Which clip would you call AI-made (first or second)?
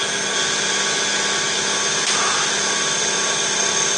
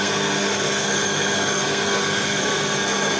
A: second